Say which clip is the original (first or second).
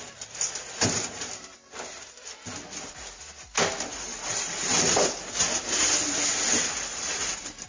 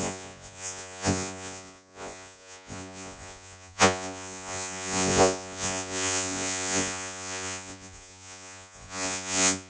first